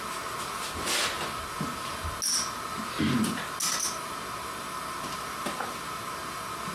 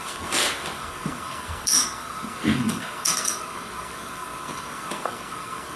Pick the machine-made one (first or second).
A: second